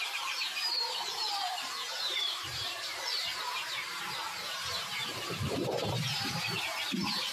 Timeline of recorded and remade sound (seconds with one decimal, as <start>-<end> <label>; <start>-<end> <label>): 0.0-2.9 remade; 2.9-3.4 recorded; 3.4-7.3 remade